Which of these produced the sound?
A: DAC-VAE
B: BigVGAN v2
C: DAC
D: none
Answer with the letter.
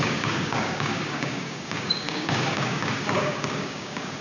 C